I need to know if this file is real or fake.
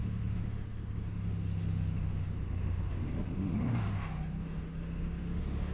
fake